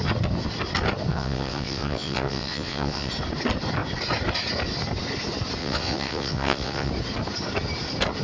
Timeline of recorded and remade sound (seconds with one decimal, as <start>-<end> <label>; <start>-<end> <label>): 0.0-1.1 recorded; 1.1-3.1 remade; 3.1-5.6 recorded; 5.6-6.9 remade; 6.9-8.2 recorded